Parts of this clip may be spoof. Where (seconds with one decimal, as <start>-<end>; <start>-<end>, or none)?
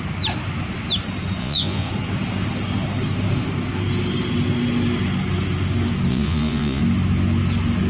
1.4-1.9; 6.1-6.8